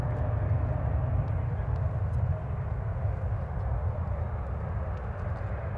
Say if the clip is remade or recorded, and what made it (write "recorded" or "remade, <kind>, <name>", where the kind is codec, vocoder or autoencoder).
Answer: recorded